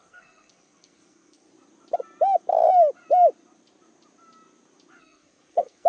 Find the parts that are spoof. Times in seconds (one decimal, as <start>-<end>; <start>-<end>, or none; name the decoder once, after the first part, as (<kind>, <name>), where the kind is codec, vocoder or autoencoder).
0.0-1.5 (codec, SNAC); 5.0-5.9